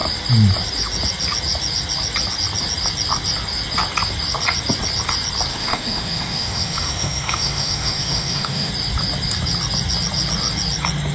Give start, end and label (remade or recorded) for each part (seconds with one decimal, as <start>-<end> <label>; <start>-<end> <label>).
0.0-5.5 recorded; 5.5-8.7 remade; 8.7-11.1 recorded